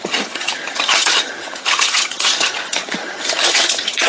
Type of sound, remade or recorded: remade